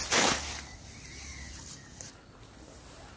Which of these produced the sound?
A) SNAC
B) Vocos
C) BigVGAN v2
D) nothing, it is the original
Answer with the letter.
D